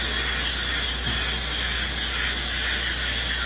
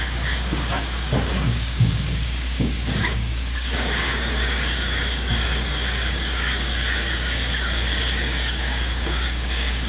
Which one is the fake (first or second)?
second